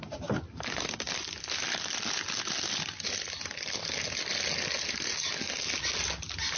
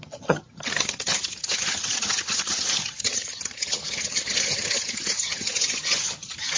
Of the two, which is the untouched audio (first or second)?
first